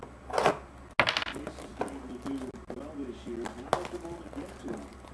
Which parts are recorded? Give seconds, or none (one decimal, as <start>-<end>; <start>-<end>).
0.0-5.1